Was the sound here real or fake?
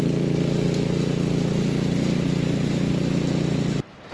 real